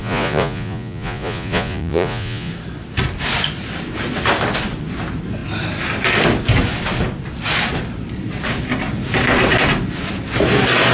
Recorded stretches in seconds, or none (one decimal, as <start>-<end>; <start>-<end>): 2.5-10.9